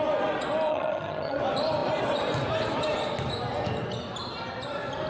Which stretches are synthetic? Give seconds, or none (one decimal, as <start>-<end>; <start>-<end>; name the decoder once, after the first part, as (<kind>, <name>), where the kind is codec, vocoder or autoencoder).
0.7-1.4 (vocoder, HiFi-GAN)